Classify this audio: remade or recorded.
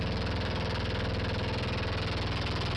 recorded